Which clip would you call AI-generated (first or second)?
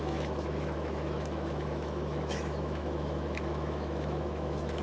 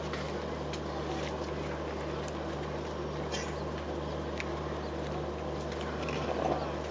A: first